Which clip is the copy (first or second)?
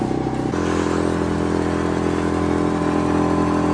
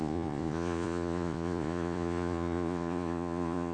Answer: second